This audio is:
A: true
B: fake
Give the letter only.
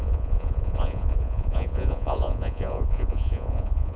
B